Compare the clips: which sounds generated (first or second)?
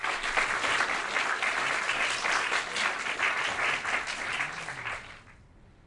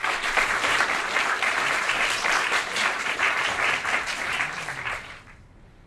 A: second